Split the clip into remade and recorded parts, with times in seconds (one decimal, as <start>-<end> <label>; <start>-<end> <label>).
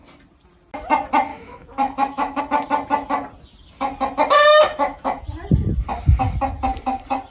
0.0-1.3 recorded; 1.3-2.4 remade; 2.4-4.5 recorded; 4.5-5.2 remade; 5.2-7.3 recorded